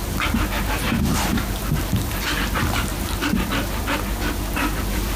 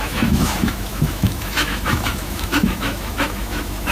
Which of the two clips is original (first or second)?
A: first